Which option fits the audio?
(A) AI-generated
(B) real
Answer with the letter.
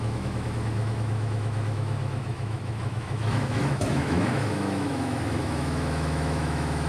A